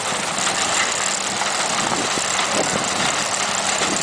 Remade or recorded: recorded